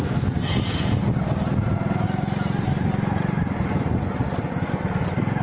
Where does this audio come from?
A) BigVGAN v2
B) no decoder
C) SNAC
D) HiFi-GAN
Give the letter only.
B